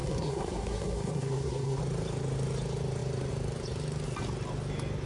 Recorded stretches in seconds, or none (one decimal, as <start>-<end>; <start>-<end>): 1.8-5.1